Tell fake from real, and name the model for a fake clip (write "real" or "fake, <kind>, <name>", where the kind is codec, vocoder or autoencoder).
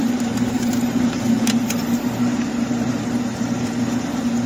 fake, vocoder, BigVGAN v2